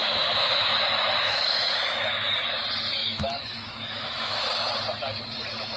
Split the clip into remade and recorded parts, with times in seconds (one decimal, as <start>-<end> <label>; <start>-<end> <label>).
0.0-2.3 remade; 2.3-3.0 recorded; 3.0-4.4 remade; 4.4-5.8 recorded